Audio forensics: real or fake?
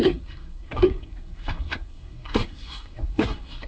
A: fake